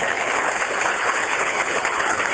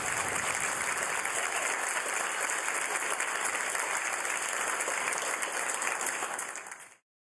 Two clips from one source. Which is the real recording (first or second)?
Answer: second